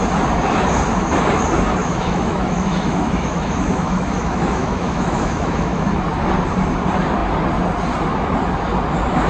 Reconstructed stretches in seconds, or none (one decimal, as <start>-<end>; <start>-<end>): 1.8-6.0